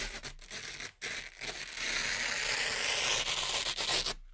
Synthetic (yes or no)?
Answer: no